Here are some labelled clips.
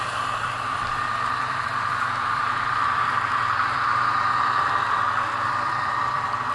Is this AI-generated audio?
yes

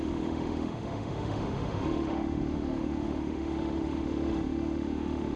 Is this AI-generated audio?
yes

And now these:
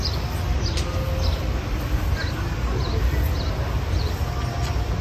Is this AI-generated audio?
no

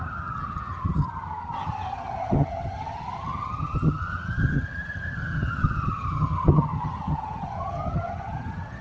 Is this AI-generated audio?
yes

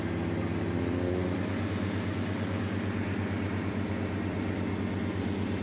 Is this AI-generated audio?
yes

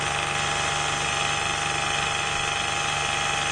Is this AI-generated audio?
no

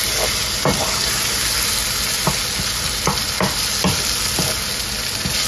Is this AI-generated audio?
no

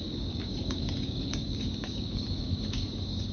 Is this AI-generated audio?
yes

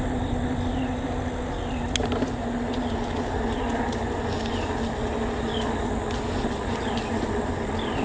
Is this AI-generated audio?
no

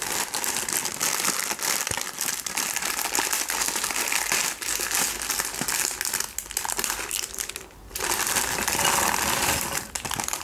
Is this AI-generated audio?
no